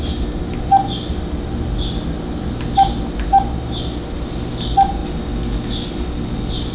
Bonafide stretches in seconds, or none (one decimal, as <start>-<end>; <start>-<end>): 0.0-6.7